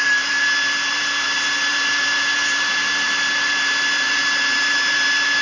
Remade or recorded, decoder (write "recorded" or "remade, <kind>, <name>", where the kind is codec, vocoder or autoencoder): remade, vocoder, BigVGAN v2